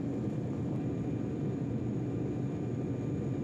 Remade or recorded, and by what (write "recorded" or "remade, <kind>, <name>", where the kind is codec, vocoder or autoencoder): recorded